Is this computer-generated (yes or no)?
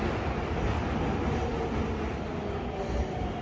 no